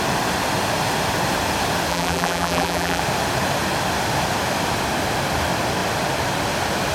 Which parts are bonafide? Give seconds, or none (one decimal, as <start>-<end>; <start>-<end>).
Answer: 0.0-1.9; 3.0-6.9